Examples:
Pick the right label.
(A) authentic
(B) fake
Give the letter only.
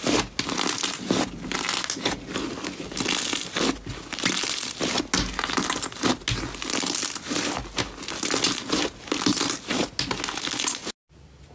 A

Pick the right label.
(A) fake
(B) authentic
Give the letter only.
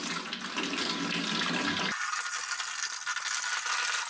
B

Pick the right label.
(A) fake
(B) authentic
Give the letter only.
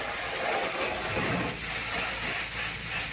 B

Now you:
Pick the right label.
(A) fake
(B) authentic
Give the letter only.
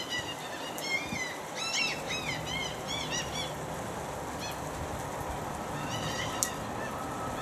B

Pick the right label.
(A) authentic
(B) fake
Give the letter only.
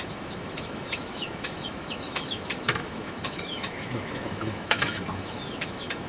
B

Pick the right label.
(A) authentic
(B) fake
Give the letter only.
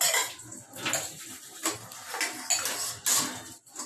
A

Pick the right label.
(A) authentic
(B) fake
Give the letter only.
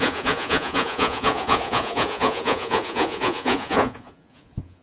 B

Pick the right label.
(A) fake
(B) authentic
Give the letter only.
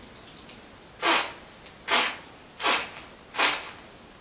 B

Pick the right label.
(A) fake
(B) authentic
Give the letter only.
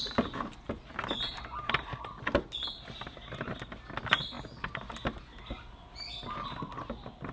B